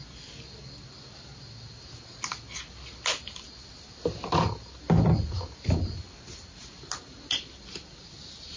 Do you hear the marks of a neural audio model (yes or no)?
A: no